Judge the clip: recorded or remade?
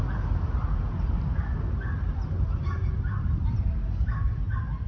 recorded